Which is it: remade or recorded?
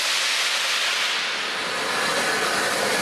recorded